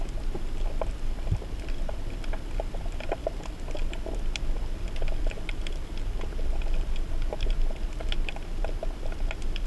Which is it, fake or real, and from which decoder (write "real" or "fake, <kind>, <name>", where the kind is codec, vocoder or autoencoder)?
real